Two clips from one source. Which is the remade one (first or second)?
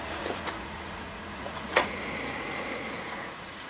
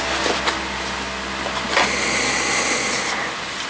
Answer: first